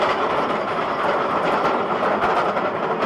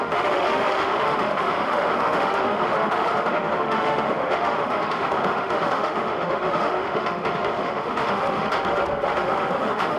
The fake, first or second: second